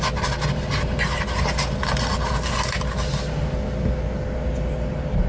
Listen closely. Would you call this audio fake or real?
real